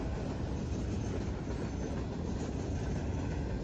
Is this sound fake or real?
real